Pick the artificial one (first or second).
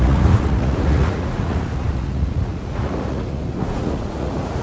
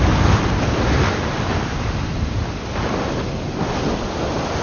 first